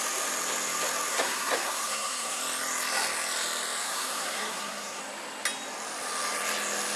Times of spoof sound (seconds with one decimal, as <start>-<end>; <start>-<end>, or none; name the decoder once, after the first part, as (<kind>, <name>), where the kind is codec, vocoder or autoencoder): 1.1-2.4 (codec, SNAC); 3.8-5.0